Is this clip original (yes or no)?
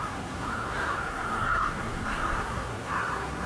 no